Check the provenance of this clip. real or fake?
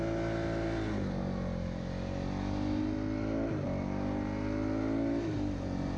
real